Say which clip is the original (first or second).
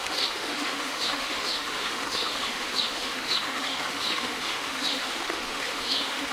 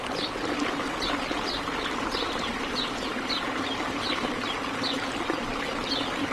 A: second